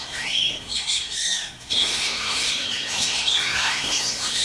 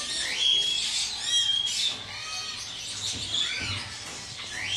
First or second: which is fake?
first